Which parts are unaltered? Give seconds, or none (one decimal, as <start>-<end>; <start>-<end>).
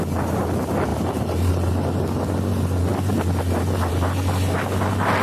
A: 0.0-0.9; 1.5-5.2